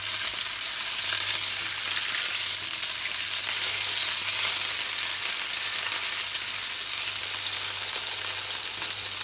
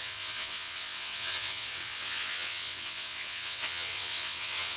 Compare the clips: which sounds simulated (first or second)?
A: second